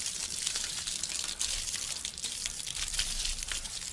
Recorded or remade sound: recorded